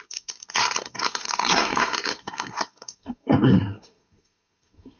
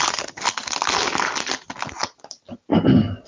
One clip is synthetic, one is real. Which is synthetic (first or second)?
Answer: first